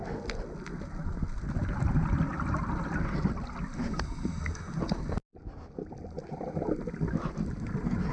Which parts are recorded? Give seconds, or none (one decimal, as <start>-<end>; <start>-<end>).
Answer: 0.0-8.1